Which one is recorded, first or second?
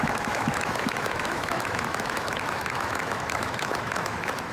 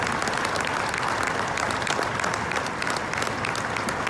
second